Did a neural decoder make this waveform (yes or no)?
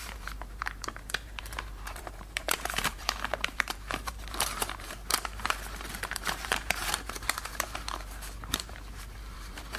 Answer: yes